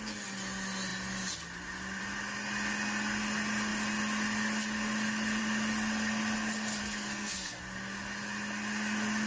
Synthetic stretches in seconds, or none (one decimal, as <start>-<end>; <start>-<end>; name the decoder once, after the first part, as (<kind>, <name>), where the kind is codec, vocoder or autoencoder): 6.8-7.6 (codec, SNAC)